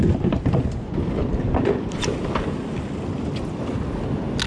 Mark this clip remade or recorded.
recorded